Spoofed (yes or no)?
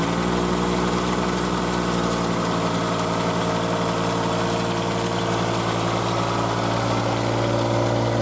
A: no